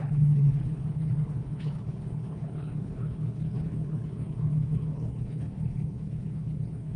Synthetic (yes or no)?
yes